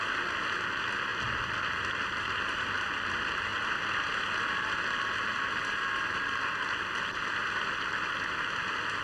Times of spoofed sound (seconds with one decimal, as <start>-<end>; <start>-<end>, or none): none